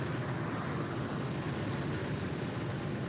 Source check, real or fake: real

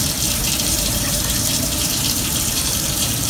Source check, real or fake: fake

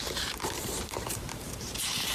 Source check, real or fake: fake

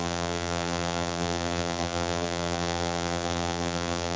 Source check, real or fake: fake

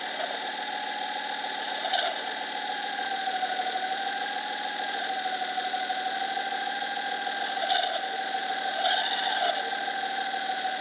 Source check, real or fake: real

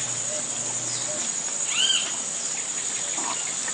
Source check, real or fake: real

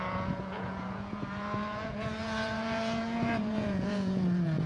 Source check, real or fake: fake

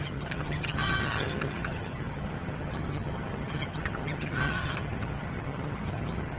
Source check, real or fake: fake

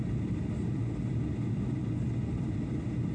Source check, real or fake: real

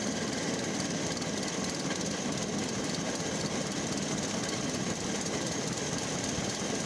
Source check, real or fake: fake